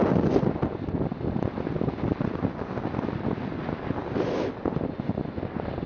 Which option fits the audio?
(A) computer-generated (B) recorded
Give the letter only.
B